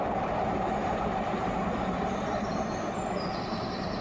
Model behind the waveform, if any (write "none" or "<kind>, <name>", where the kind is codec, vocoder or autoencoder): vocoder, BigVGAN v2